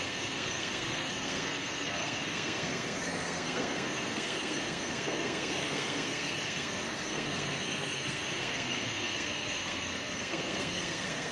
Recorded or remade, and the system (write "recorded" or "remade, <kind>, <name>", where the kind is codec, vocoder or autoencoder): remade, codec, SNAC